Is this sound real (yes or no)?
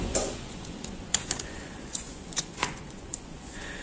no